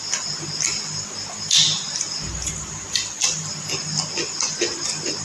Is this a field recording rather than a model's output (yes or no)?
yes